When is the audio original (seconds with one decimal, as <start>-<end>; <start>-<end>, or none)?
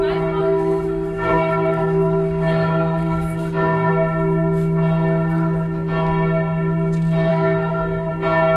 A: 0.0-0.4; 3.9-7.3; 8.1-8.6